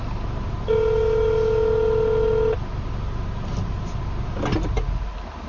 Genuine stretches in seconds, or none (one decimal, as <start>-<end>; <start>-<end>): 0.0-4.5; 5.0-5.5